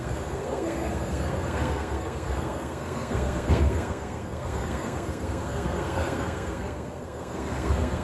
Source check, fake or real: fake